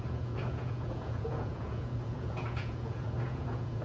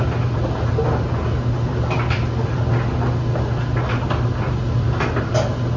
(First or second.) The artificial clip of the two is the first